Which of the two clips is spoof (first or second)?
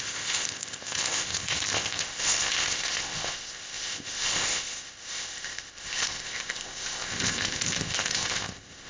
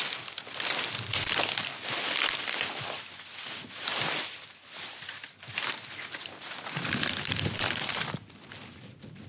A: first